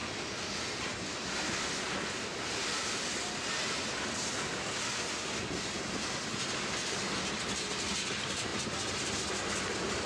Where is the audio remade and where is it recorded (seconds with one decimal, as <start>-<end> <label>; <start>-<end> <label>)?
0.0-10.1 recorded